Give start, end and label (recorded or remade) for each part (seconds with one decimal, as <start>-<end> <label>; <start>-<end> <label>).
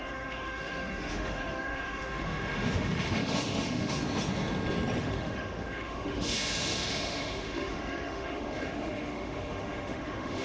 0.0-4.0 remade; 4.0-5.0 recorded; 5.0-10.4 remade